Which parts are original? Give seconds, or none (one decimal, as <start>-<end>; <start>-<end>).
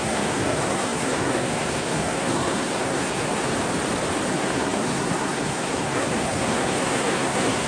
3.5-4.3